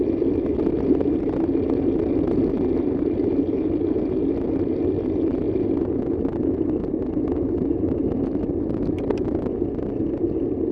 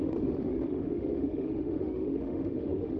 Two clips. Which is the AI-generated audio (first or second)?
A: second